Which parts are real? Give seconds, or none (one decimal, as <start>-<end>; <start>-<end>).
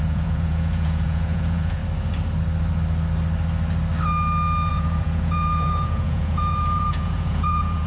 1.8-4.7